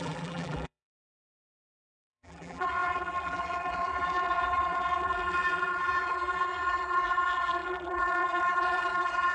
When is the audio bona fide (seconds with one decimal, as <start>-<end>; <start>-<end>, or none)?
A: none